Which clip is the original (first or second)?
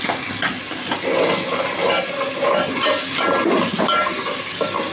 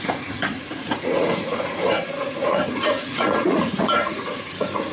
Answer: first